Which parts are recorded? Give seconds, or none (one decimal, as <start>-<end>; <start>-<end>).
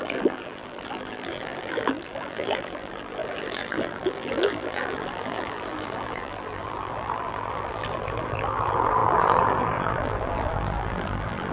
none